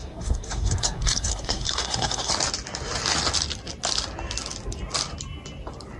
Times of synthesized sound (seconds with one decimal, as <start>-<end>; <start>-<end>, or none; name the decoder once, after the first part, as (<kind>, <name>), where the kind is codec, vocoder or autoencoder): 0.0-2.3 (codec, SNAC)